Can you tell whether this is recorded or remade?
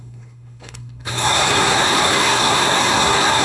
remade